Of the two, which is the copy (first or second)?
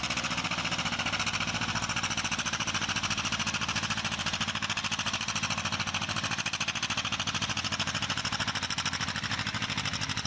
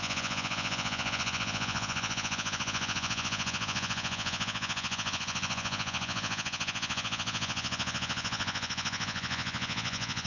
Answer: second